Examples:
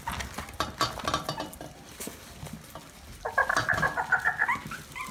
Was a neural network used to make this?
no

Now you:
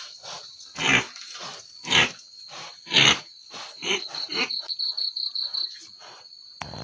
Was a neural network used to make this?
no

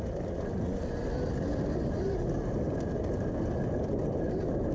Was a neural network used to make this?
no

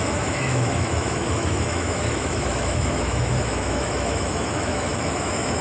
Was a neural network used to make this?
yes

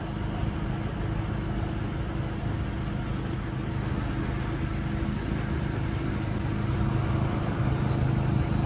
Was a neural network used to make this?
no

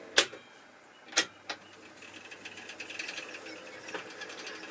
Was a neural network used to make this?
no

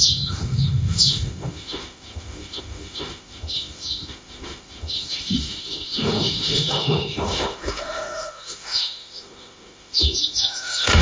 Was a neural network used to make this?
yes